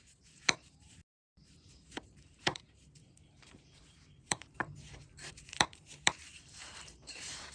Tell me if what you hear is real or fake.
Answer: fake